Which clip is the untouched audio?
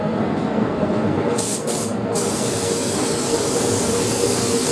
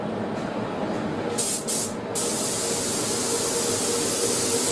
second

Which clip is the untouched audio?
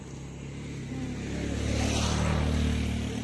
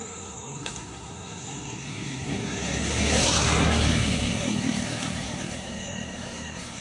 first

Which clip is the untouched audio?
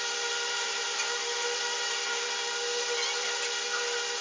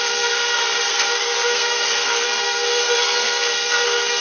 first